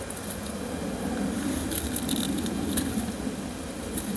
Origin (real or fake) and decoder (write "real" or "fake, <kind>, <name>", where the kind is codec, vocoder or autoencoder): real